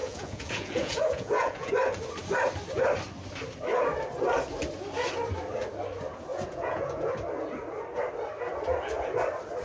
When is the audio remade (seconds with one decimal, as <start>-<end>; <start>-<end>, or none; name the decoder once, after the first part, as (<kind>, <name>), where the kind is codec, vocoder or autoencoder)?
0.0-1.7 (vocoder, Vocos); 6.3-7.1

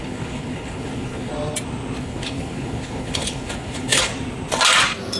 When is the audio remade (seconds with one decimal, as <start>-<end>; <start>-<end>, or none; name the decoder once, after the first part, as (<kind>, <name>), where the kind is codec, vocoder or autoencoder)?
0.0-1.3 (codec, HILCodec); 2.0-4.1

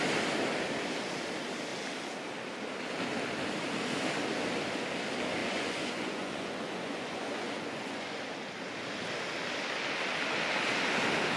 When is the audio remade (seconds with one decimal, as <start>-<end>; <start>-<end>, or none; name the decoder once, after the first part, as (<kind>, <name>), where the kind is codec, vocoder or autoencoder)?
5.4-8.2 (vocoder, Vocos)

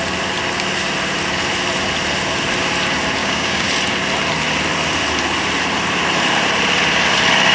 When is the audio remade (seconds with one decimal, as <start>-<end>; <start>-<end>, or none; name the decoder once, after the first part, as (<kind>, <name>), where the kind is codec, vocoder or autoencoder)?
3.2-3.7 (codec, DAC)

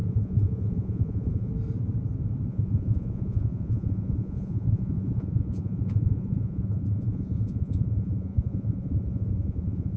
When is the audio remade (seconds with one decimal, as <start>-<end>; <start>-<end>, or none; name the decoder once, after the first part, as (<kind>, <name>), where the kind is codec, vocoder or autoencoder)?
0.0-1.5 (vocoder, Vocos); 2.5-10.0

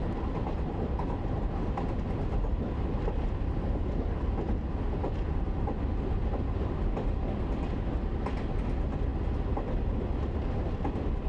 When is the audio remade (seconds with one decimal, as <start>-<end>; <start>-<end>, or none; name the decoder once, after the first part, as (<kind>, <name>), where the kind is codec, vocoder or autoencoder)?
none

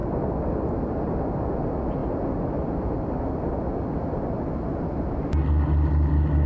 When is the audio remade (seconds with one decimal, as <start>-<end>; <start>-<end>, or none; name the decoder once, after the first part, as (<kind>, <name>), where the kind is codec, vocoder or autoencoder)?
none

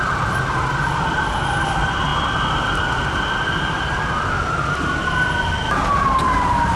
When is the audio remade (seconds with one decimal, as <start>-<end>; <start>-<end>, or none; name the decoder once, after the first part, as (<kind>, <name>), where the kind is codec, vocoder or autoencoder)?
none